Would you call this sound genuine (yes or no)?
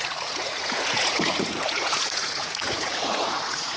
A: no